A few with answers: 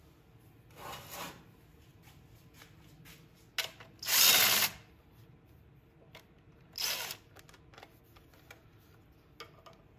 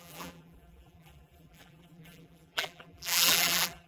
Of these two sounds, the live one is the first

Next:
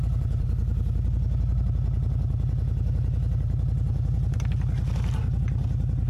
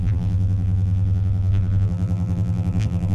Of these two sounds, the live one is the first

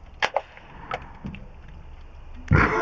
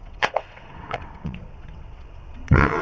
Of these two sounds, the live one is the first